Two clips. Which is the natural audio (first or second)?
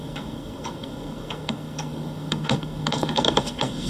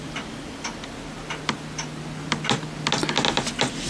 second